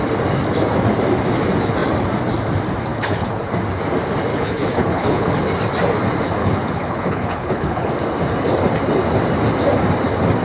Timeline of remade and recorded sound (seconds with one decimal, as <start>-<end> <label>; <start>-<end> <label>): 0.0-2.9 recorded; 2.9-3.5 remade; 3.5-4.3 recorded; 4.3-5.3 remade; 5.3-6.4 recorded; 6.4-7.9 remade; 7.9-10.4 recorded